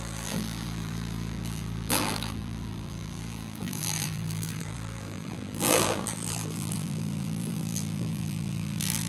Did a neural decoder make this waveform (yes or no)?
yes